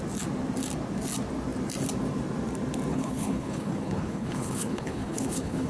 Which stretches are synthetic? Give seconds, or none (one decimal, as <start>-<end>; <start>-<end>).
2.9-5.7